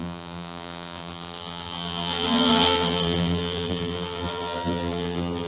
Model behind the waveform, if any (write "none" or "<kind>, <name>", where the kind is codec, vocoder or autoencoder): vocoder, BigVGAN v2